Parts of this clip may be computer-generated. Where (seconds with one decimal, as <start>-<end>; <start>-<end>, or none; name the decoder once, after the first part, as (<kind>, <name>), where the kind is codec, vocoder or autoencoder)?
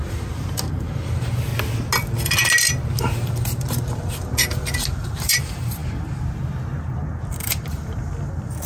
0.0-1.5 (vocoder, BigVGAN v2); 3.0-5.8; 7.3-8.7